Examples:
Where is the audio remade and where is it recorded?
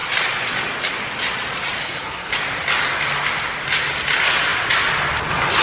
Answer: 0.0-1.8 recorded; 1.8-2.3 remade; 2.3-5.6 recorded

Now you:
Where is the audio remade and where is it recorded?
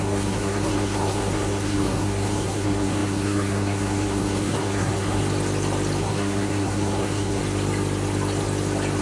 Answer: 0.0-5.2 remade; 5.2-6.0 recorded; 6.0-7.4 remade; 7.4-9.0 recorded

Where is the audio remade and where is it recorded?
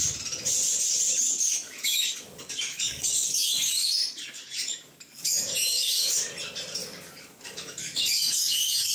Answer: 0.0-1.4 recorded; 1.4-6.2 remade; 6.2-6.8 recorded; 6.8-8.9 remade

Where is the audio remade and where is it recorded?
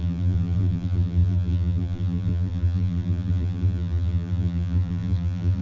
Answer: 0.0-5.6 remade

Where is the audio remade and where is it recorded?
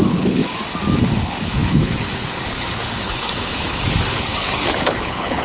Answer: 0.0-0.4 remade; 0.4-1.0 recorded; 1.0-5.4 remade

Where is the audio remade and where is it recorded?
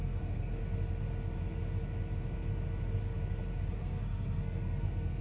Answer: 0.0-0.6 remade; 0.6-3.7 recorded; 3.7-5.2 remade